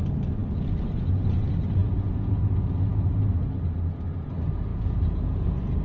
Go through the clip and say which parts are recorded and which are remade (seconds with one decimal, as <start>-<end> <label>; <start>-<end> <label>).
0.0-1.8 recorded; 1.8-2.4 remade; 2.4-4.7 recorded; 4.7-5.8 remade